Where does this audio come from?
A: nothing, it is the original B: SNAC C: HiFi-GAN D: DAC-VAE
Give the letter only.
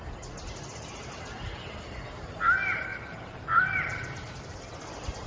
A